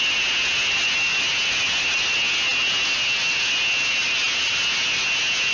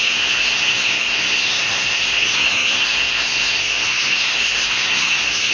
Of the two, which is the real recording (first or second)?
first